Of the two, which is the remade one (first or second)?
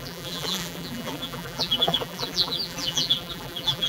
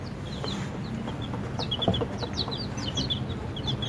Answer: first